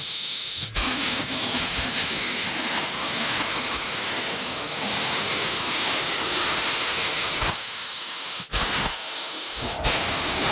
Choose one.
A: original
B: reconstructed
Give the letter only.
B